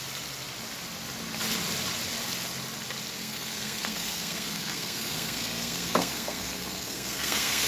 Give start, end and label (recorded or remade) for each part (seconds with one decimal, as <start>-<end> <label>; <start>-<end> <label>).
0.0-3.2 recorded; 3.2-7.7 remade